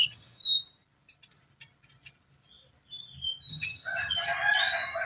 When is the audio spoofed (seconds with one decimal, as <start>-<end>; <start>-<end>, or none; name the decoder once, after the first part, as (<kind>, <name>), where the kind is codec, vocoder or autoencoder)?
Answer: 0.0-0.4 (vocoder, HiFi-GAN); 3.5-4.3